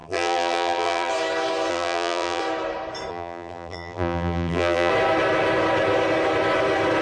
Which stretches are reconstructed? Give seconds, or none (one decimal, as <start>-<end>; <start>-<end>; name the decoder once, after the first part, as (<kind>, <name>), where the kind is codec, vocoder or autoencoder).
0.0-1.1 (vocoder, BigVGAN v2); 1.7-2.4; 3.1-4.9